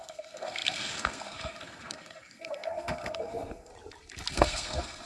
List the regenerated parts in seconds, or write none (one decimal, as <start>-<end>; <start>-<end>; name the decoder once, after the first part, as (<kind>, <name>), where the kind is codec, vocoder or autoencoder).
0.0-3.7 (codec, SNAC); 4.3-5.1